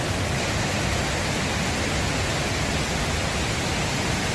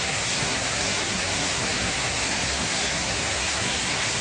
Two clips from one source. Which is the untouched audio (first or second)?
first